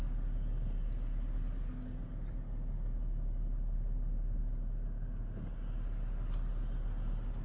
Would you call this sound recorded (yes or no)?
yes